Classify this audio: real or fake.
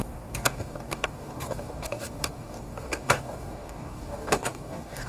fake